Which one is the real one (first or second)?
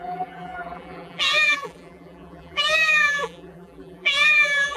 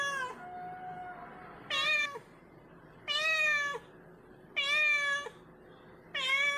second